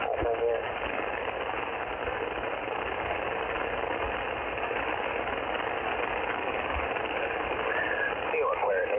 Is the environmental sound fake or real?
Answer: real